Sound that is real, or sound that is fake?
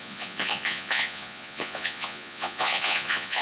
fake